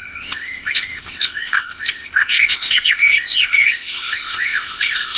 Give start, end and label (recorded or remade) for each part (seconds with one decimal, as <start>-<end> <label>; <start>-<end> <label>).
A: 0.0-5.2 remade